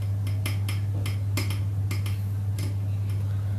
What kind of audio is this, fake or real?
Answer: real